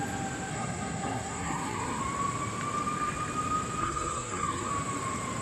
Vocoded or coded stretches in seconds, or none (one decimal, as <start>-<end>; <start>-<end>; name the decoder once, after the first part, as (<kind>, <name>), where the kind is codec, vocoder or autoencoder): 0.5-2.0 (codec, SNAC); 3.8-4.7